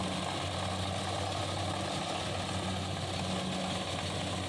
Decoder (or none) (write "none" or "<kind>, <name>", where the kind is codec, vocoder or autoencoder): none